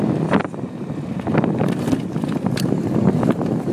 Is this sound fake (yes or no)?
no